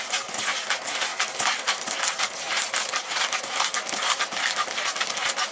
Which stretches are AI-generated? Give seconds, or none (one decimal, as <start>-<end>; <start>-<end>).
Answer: none